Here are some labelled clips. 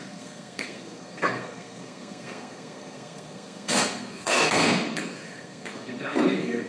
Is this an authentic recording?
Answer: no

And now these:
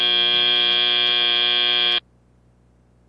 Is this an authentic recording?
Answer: yes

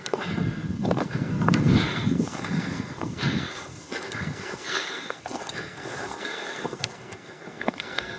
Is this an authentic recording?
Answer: no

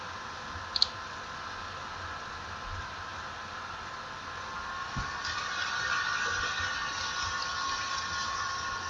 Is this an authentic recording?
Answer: yes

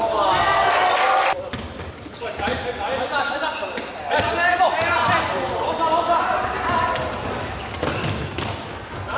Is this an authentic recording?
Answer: yes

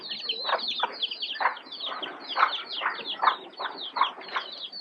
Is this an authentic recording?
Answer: yes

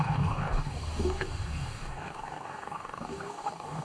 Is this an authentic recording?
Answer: no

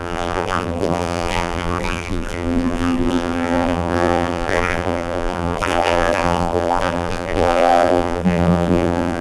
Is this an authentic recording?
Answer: no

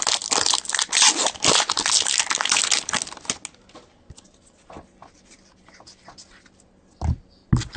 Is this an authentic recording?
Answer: yes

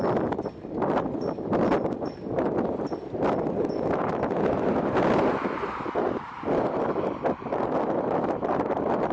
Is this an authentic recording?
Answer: yes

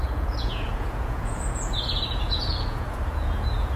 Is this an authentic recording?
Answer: no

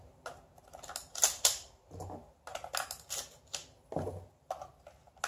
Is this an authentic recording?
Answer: yes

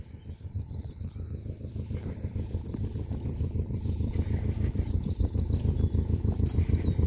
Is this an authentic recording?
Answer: no